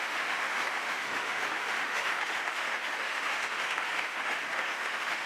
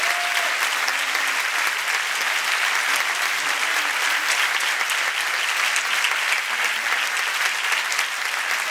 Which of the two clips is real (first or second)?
second